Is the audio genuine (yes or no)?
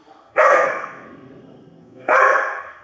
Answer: no